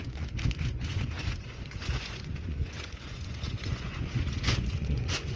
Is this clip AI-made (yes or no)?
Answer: yes